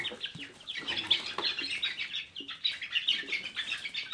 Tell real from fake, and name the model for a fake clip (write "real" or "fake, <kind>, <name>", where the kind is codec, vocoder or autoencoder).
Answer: real